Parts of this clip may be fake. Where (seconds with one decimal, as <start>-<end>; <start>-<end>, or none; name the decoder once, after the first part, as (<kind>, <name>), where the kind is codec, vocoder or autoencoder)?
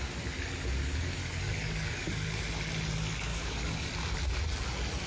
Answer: 1.2-2.1 (codec, DAC); 3.3-3.9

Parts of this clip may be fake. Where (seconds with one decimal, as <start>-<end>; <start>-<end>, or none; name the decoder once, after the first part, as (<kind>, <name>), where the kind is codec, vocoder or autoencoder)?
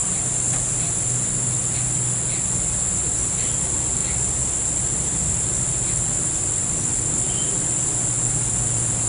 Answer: none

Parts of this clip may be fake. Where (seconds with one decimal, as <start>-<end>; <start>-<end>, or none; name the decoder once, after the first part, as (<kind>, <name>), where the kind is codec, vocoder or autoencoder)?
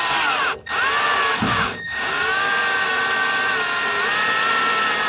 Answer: 1.3-2.6 (codec, DAC)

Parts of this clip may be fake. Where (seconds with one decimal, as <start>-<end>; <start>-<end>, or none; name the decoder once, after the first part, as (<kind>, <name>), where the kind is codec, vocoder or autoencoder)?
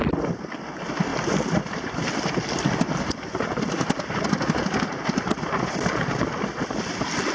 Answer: none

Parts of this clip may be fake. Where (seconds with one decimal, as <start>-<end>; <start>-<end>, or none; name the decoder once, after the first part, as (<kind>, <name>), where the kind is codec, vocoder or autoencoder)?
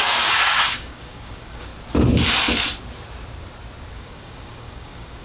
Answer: 0.0-1.7 (codec, DAC); 3.9-5.2